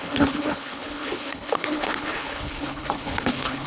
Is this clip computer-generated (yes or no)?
yes